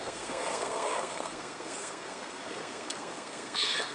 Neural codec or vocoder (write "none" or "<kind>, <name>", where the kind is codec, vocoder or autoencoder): codec, SNAC